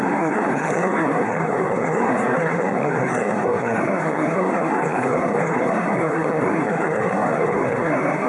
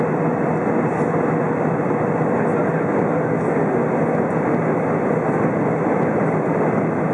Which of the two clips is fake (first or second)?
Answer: first